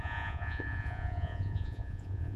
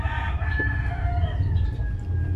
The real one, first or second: second